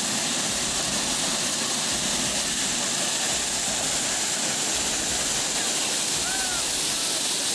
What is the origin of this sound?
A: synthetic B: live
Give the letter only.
B